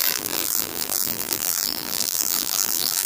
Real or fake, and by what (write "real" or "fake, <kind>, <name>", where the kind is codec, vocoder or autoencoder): fake, vocoder, BigVGAN v2